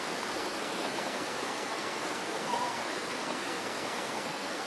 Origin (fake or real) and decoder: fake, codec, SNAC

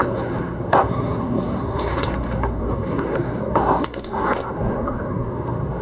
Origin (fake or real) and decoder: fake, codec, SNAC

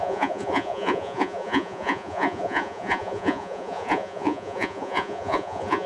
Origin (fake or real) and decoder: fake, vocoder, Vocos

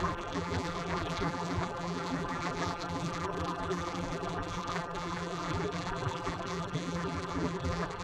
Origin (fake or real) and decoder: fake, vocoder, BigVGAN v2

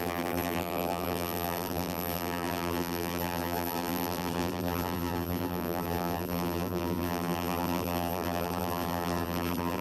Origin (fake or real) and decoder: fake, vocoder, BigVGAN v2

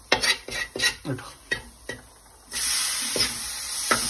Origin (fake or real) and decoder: real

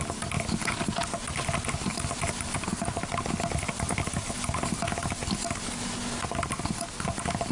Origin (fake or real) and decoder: real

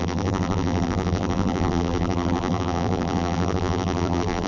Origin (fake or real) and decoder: fake, vocoder, BigVGAN v2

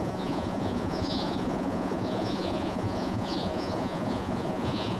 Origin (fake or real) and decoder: fake, vocoder, Vocos